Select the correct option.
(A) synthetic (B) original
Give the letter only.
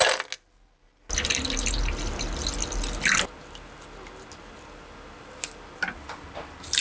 B